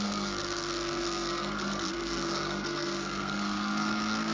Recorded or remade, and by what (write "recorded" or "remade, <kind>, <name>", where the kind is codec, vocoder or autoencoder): remade, codec, SNAC